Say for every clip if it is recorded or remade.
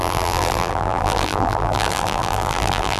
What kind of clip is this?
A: remade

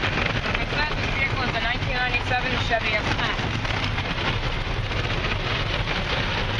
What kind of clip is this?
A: recorded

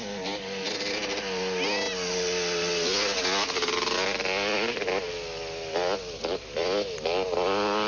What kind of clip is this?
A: recorded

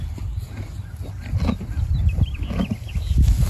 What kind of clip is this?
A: recorded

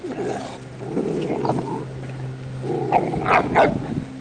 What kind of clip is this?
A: recorded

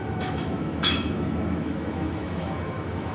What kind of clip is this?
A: remade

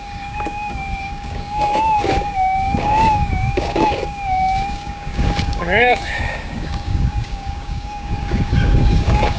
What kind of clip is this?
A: remade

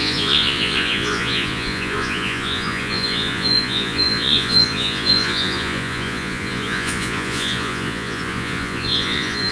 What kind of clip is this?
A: remade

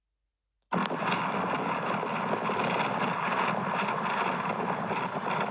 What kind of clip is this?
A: recorded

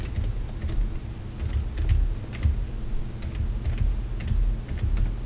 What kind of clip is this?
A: recorded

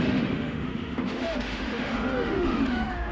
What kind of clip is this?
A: remade